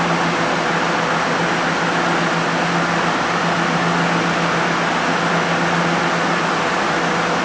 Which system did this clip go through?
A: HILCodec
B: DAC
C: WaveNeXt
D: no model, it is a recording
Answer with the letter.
D